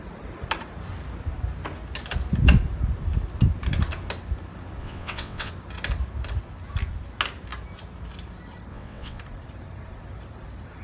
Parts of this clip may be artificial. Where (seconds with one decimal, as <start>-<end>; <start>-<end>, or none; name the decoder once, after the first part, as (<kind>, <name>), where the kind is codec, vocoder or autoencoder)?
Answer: 4.8-5.5 (vocoder, WaveNeXt); 8.7-9.2